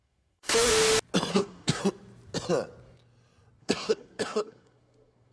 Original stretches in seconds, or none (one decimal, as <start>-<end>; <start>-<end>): 0.7-1.3; 1.8-3.6